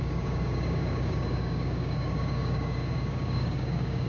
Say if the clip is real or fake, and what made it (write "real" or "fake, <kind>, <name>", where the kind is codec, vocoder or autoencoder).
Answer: fake, codec, DAC